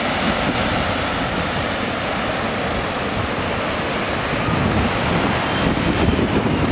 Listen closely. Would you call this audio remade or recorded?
recorded